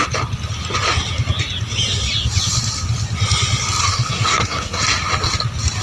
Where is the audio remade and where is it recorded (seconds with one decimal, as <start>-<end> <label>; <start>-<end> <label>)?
0.0-3.8 recorded; 3.8-4.8 remade; 4.8-5.8 recorded